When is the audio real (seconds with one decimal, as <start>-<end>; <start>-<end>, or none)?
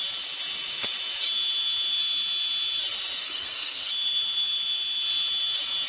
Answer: 0.0-3.2; 3.9-5.9